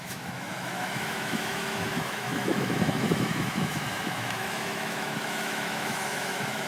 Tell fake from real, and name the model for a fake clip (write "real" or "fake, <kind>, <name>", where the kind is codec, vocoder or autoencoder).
fake, autoencoder, DAC-VAE